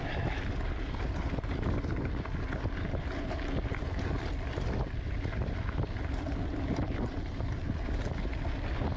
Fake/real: real